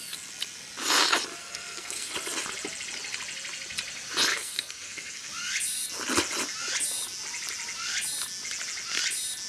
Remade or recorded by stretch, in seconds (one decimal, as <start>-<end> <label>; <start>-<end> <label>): 0.0-1.4 recorded; 1.4-2.1 remade; 2.1-4.3 recorded; 4.3-5.3 remade; 5.3-9.5 recorded